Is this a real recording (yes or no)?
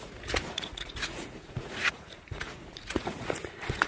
no